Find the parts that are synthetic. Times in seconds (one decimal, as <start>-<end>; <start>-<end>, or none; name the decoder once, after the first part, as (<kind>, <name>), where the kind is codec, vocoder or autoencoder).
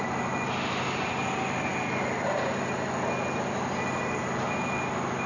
none